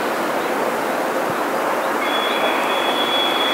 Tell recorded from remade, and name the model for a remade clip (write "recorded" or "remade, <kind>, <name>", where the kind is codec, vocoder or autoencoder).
recorded